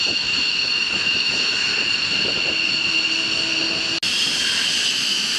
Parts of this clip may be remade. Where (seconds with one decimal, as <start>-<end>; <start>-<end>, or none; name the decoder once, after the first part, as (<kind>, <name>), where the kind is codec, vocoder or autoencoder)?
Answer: 0.0-1.7 (autoencoder, DAC-VAE); 4.9-5.4